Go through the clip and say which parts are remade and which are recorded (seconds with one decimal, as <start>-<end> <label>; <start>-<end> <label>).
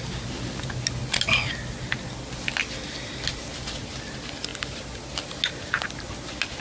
0.0-6.6 recorded